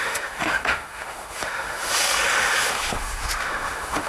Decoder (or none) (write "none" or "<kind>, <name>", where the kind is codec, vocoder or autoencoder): autoencoder, DAC-VAE